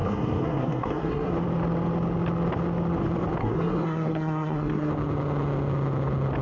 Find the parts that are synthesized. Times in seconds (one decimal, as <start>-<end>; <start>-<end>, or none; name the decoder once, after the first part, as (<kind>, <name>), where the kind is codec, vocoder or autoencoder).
0.0-1.3 (codec, SNAC); 3.4-4.9